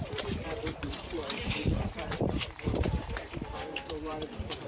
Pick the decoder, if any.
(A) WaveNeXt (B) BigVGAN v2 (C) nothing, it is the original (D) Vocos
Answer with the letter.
B